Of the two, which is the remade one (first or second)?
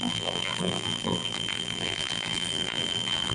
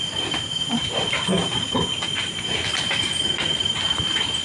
first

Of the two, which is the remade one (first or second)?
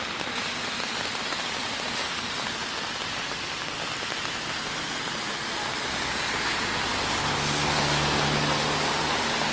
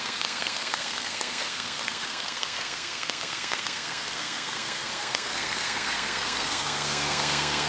second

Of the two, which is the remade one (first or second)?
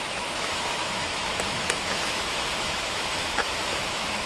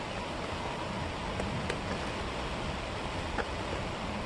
first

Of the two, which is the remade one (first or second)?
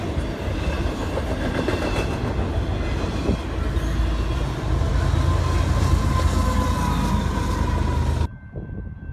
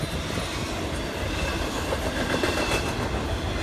second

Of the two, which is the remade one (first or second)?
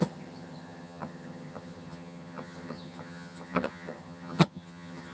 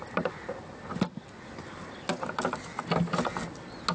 first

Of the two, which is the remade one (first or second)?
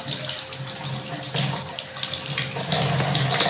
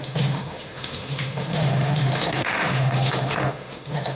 second